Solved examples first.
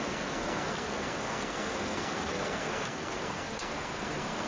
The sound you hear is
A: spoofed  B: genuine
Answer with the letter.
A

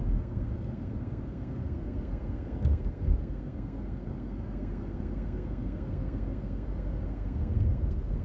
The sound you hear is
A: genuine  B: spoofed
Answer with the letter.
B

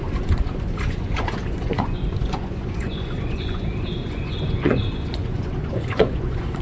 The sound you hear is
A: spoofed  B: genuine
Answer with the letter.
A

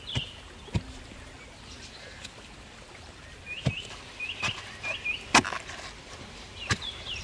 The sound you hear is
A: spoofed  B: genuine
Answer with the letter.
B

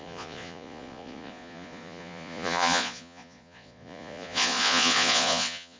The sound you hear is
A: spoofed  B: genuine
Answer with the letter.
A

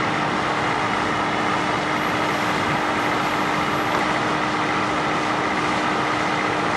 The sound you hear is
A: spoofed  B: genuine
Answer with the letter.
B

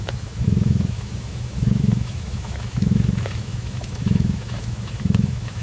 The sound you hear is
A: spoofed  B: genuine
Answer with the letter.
A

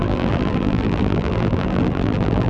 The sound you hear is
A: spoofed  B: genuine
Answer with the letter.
A